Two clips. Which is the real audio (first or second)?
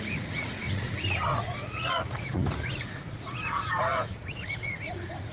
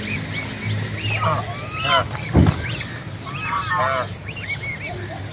second